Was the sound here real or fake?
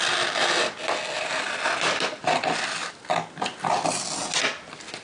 real